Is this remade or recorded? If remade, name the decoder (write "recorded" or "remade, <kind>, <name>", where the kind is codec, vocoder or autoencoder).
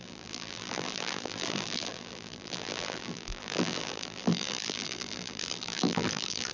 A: remade, vocoder, BigVGAN v2